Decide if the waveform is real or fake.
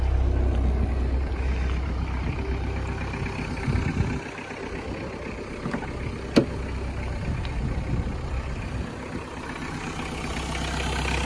real